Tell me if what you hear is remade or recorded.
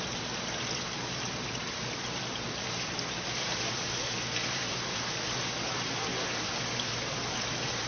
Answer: remade